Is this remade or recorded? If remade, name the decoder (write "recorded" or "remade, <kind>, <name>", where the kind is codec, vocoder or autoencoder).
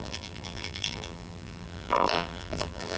remade, vocoder, BigVGAN v2